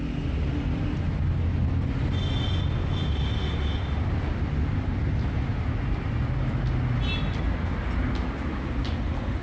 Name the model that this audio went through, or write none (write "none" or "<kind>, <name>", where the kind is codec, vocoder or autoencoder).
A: none